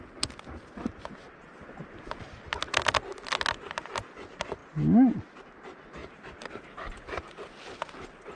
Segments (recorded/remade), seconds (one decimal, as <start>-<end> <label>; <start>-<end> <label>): 0.0-8.4 recorded